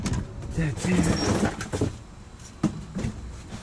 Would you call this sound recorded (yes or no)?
yes